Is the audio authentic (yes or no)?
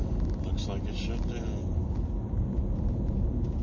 yes